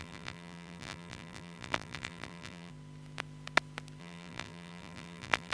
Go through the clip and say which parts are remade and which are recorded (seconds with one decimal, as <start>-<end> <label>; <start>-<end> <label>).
0.0-2.7 remade; 2.7-4.0 recorded; 4.0-5.5 remade